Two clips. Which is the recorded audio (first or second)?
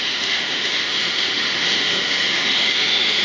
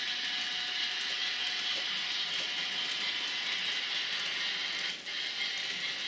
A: second